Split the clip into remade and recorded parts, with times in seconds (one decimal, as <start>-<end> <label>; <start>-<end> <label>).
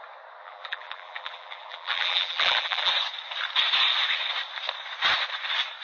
0.0-0.4 recorded; 0.4-2.9 remade; 2.9-5.8 recorded